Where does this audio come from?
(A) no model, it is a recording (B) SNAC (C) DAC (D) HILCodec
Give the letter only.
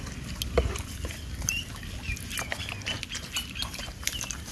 A